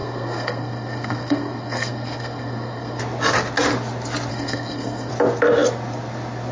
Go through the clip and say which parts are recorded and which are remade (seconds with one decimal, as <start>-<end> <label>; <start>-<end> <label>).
0.0-3.0 remade; 3.0-4.3 recorded; 4.3-5.1 remade; 5.1-6.5 recorded